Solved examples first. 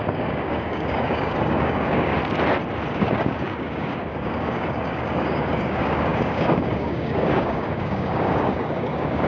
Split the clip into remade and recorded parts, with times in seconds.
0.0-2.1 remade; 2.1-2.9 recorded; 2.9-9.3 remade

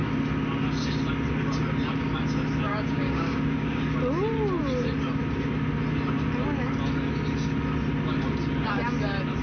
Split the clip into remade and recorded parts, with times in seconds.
0.0-2.7 recorded; 2.7-3.8 remade; 3.8-9.4 recorded